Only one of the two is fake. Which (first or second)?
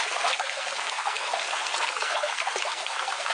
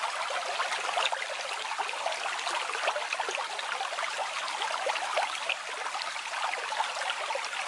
first